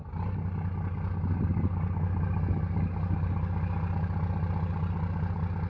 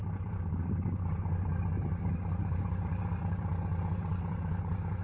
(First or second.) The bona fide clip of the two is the first